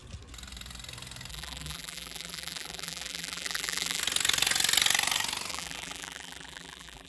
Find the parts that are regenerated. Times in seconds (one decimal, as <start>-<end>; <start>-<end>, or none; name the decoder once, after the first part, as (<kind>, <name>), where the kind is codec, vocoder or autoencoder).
1.3-4.0 (vocoder, BigVGAN v2); 5.5-7.1